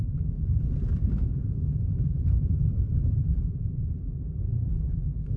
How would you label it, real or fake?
fake